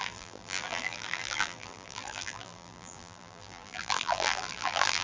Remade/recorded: remade